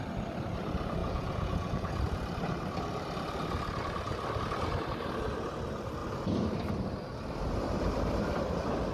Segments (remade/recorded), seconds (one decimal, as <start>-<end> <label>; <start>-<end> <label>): 0.0-1.0 recorded; 1.0-2.0 remade; 2.0-8.9 recorded